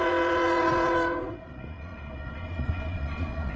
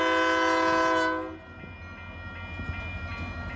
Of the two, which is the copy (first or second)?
first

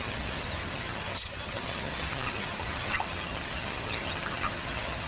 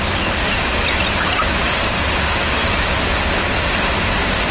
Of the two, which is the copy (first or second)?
first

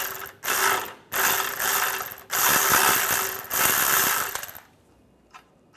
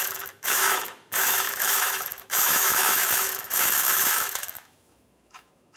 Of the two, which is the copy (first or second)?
second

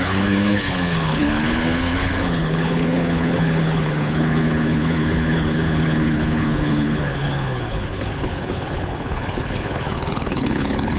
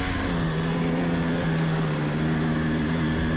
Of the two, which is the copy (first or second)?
first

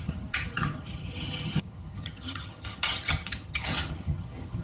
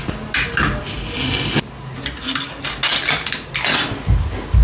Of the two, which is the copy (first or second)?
first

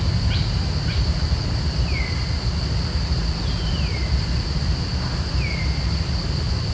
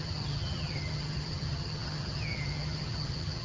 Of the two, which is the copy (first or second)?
second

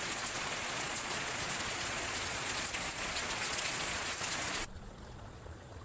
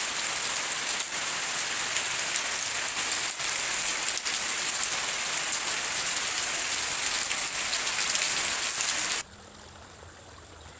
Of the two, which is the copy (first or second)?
first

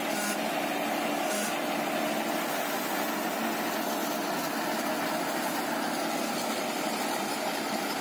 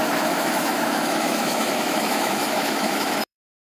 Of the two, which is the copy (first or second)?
second